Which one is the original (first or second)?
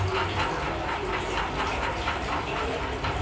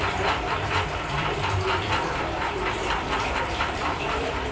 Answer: first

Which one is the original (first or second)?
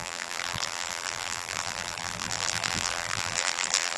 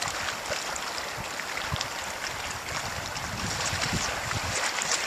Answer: second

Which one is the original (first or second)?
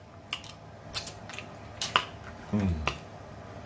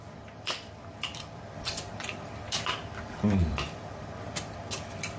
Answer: first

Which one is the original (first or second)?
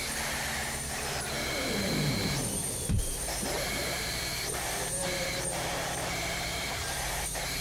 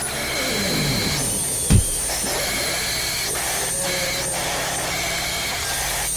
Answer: second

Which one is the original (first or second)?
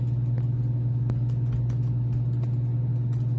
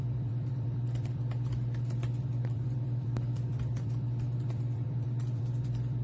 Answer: first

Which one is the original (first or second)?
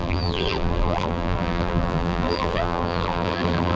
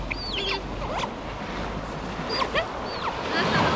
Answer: second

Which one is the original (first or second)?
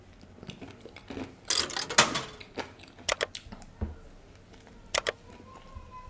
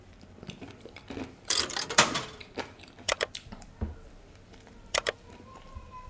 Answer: first